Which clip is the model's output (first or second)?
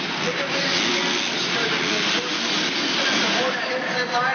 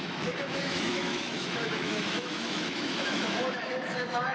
second